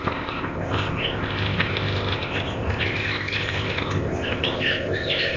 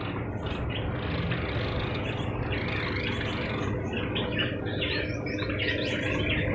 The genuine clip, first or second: second